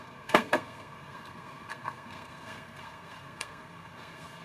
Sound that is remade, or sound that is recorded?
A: remade